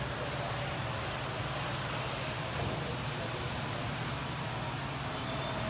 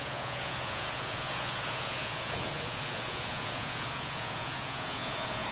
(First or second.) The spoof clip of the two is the second